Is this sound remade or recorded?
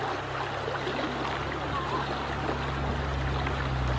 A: recorded